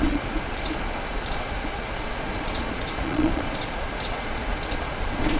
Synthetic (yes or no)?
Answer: yes